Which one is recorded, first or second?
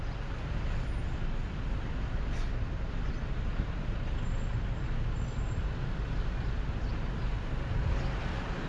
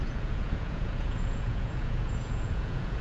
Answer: first